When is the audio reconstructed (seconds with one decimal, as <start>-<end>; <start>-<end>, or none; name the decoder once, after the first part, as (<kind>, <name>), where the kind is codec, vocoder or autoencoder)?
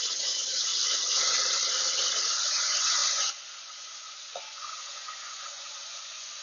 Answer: 0.0-0.7 (vocoder, Vocos); 2.6-6.4